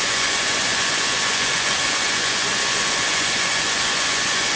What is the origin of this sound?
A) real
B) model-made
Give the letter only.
B